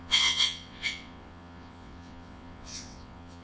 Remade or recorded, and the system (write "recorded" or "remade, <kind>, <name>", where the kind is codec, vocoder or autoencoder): remade, vocoder, WaveNeXt